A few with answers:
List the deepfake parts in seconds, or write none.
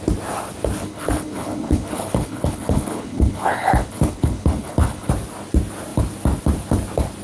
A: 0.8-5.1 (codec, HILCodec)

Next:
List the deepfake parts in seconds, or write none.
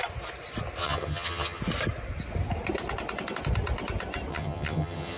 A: 0.8-1.6 (vocoder, HiFi-GAN); 4.3-5.2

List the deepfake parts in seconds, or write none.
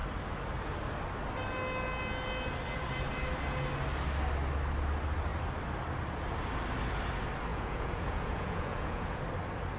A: 7.5-9.2 (vocoder, Vocos)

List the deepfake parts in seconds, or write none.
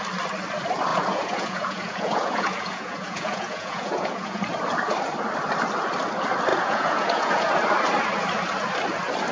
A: 0.9-4.4 (vocoder, Vocos); 6.5-7.5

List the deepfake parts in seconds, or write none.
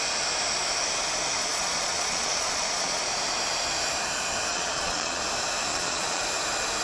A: 1.4-3.0 (vocoder, Vocos); 4.5-5.2; 5.7-6.2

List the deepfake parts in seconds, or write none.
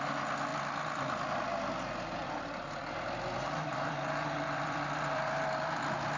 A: 0.5-1.4 (vocoder, BigVGAN v2); 2.2-5.8